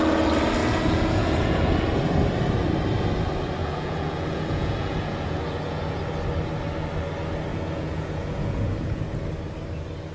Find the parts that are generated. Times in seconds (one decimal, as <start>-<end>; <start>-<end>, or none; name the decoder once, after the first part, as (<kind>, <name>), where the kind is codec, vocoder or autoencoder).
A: 0.6-1.8 (vocoder, Vocos); 3.6-6.0; 7.5-9.0